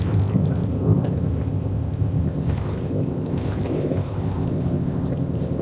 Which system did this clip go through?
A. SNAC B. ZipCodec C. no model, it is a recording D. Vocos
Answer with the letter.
B